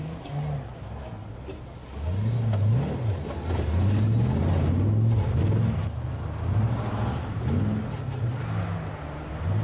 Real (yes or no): yes